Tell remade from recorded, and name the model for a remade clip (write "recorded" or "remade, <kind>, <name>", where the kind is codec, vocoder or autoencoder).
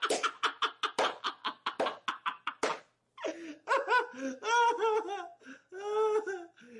recorded